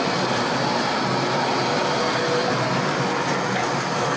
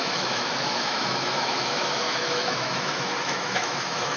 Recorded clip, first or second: first